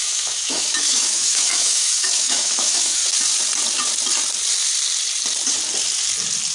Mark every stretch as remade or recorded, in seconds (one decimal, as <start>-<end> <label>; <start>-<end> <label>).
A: 0.0-3.0 remade; 3.0-6.5 recorded